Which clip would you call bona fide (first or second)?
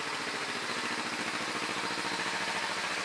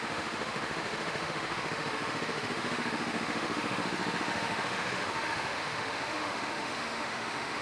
first